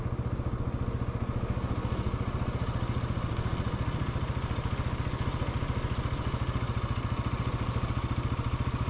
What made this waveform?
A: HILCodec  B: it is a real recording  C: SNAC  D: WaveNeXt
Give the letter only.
B